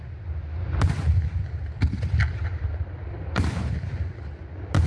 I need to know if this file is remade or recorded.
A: recorded